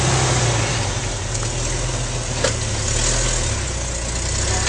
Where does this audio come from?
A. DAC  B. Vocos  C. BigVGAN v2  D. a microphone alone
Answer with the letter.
D